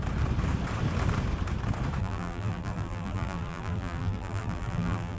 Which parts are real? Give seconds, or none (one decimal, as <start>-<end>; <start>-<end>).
0.0-2.0